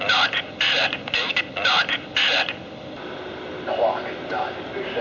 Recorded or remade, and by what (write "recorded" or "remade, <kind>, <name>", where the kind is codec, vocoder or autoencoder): recorded